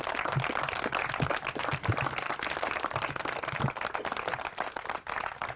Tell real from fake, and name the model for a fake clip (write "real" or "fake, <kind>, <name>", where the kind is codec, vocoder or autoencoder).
real